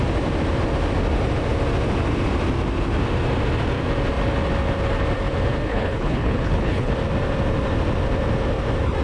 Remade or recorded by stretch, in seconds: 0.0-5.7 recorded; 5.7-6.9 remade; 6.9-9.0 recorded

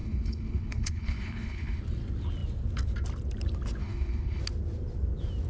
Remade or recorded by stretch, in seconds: 0.0-1.8 remade; 1.8-3.8 recorded; 3.8-4.4 remade; 4.4-5.5 recorded

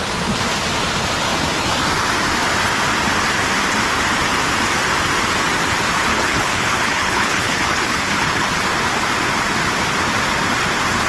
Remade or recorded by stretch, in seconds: 0.0-6.1 recorded; 6.1-8.6 remade; 8.6-11.1 recorded

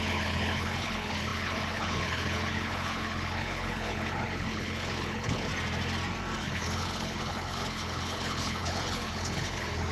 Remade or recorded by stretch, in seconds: 0.0-5.5 remade; 5.5-6.4 recorded; 6.4-9.9 remade

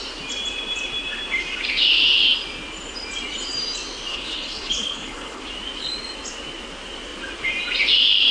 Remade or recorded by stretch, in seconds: 0.0-4.1 recorded; 4.1-5.4 remade; 5.4-8.3 recorded

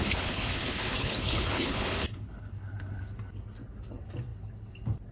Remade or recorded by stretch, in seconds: 0.0-3.0 remade; 3.0-5.1 recorded